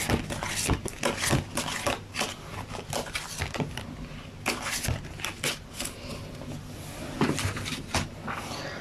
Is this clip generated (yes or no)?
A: no